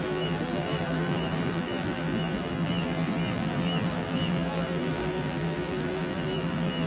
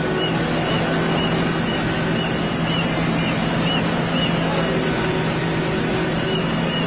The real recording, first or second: second